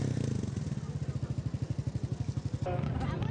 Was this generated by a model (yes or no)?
no